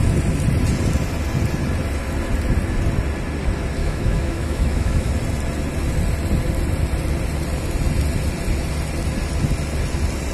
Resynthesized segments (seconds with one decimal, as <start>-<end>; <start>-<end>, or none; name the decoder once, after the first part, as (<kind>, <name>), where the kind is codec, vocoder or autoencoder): 3.8-5.1 (autoencoder, DAC-VAE)